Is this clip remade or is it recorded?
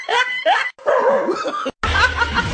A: recorded